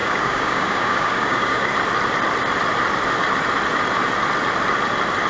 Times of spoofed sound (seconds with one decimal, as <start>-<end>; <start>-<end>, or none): 0.0-1.7